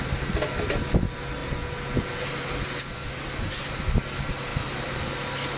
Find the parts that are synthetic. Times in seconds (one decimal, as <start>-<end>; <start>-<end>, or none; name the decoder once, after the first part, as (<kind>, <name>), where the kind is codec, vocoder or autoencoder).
none